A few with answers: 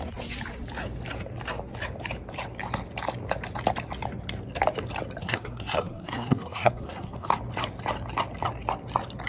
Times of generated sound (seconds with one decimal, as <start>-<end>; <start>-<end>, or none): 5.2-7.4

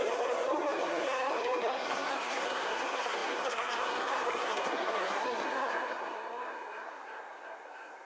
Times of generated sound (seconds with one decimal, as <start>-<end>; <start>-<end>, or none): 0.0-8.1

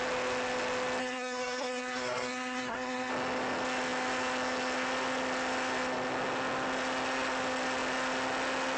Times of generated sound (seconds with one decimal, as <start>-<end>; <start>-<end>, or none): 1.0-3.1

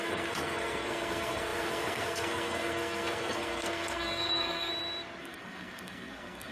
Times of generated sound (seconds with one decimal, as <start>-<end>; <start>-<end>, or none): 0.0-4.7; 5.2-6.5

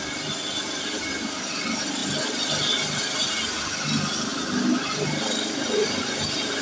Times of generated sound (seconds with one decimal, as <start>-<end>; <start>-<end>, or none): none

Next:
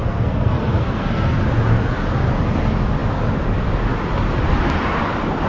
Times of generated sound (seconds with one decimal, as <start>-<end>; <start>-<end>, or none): 0.0-1.4